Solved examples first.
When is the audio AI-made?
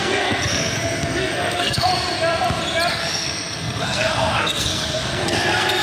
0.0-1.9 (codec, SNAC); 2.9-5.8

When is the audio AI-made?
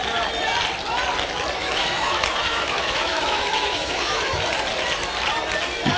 1.6-4.4 (autoencoder, DAC-VAE)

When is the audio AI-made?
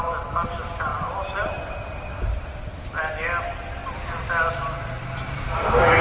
0.9-3.4 (vocoder, BigVGAN v2)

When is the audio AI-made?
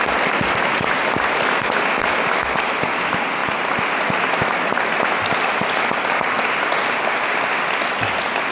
none